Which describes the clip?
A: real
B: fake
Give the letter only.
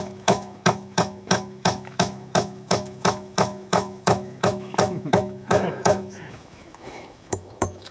B